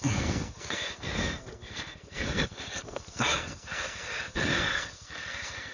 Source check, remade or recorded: remade